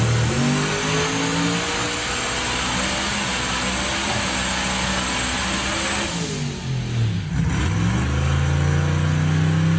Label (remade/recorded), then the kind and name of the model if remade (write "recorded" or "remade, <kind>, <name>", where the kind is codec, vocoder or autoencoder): recorded